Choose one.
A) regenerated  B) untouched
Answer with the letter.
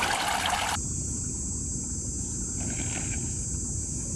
B